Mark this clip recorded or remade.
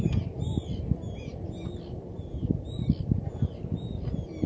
recorded